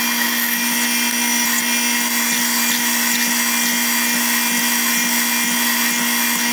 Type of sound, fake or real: real